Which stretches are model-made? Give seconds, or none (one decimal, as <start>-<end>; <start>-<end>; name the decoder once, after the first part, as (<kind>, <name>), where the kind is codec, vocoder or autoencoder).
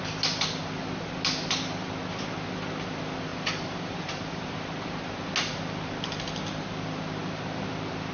3.3-5.0 (vocoder, BigVGAN v2)